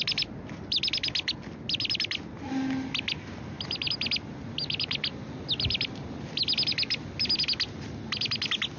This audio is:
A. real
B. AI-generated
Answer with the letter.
A